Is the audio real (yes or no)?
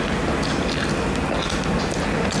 yes